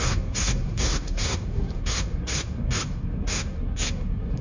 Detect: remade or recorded remade